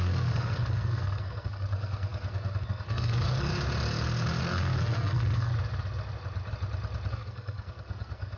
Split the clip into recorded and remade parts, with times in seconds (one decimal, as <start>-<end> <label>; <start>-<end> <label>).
0.0-3.5 remade; 3.5-4.4 recorded; 4.4-5.5 remade; 5.5-7.1 recorded; 7.1-8.4 remade